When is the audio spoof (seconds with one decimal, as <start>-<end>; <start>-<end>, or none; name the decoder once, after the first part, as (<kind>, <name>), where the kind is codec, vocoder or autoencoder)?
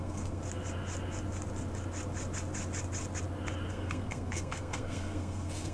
0.0-0.4 (codec, SNAC); 3.7-5.7